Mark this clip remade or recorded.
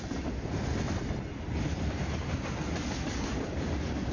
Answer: recorded